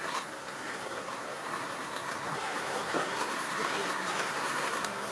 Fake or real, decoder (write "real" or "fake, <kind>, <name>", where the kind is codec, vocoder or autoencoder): fake, codec, SNAC